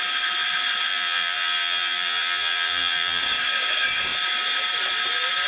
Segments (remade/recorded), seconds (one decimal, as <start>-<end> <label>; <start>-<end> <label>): 0.0-0.9 recorded; 0.9-3.2 remade; 3.2-5.5 recorded